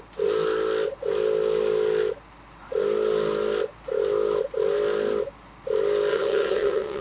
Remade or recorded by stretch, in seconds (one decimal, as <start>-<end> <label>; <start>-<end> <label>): 0.0-6.1 recorded; 6.1-7.0 remade